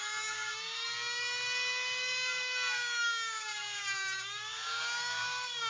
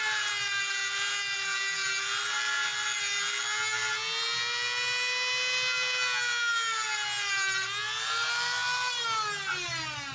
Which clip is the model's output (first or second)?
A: first